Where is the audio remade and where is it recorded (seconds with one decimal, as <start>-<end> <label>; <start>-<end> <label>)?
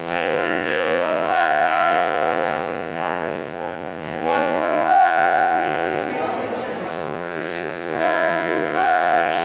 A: 0.0-6.1 remade; 6.1-6.9 recorded; 6.9-9.4 remade